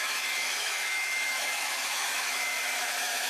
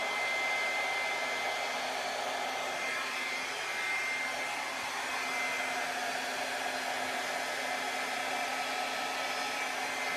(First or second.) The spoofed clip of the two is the first